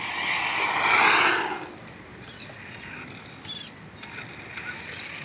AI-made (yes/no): no